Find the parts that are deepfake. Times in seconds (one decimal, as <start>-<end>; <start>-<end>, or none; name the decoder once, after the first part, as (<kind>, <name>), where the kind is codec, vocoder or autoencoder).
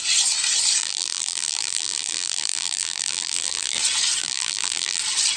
0.8-3.8 (vocoder, BigVGAN v2); 4.2-5.0